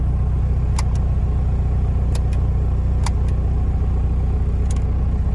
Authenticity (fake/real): real